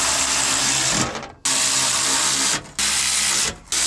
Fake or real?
real